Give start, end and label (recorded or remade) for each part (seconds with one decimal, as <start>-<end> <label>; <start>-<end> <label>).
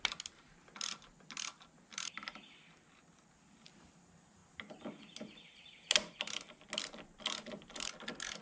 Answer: 0.0-8.4 recorded